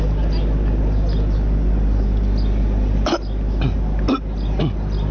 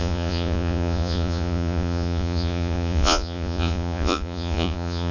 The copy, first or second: second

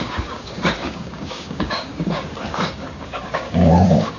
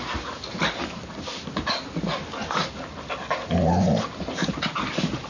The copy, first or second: first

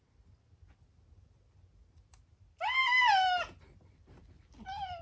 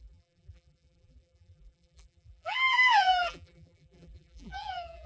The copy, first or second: second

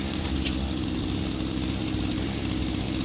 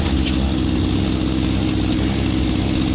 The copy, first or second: first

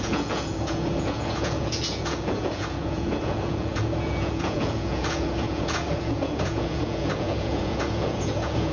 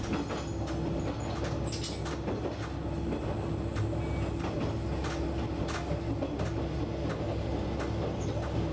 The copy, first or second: first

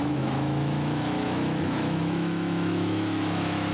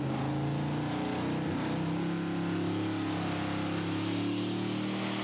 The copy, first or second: first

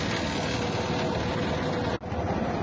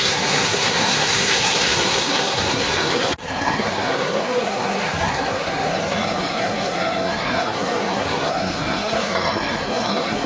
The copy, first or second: second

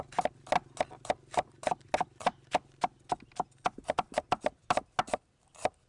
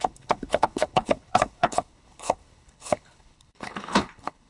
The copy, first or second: second